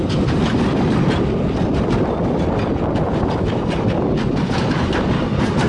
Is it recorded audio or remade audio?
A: recorded